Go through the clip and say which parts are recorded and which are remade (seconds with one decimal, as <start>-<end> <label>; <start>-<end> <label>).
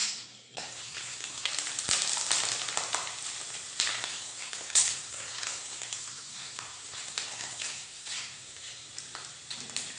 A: 0.0-1.5 remade; 1.5-3.9 recorded; 3.9-8.9 remade; 8.9-10.0 recorded